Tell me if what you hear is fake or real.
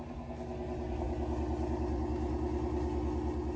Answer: real